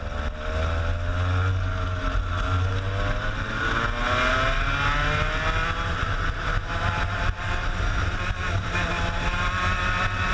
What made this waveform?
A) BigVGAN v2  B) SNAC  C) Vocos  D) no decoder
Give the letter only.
D